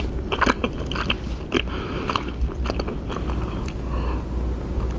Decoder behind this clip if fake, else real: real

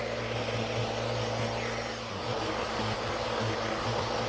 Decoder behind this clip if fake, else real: real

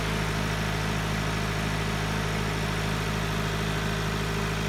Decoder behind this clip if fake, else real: real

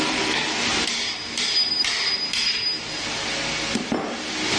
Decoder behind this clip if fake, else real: real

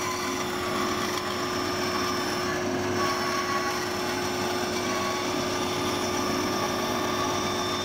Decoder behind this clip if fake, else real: real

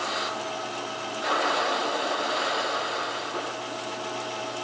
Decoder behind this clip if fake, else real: real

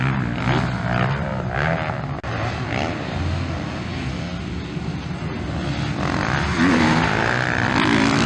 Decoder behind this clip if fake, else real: real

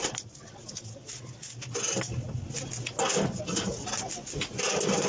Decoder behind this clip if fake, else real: real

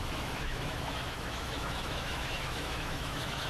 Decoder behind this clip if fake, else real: fake, autoencoder, DAC-VAE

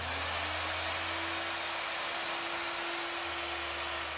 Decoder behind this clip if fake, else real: real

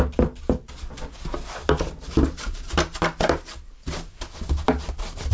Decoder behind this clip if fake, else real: real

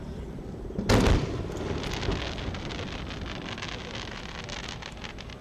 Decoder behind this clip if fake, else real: real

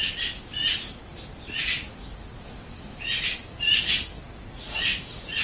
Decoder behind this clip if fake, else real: real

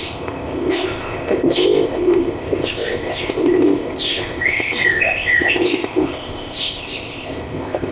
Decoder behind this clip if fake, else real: fake, codec, ZipCodec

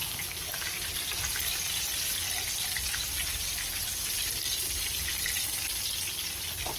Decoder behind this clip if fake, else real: fake, vocoder, BigVGAN v2